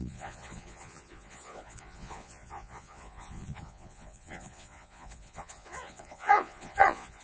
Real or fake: fake